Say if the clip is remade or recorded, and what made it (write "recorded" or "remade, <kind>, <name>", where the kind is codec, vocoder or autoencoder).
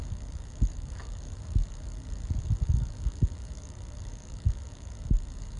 remade, codec, DAC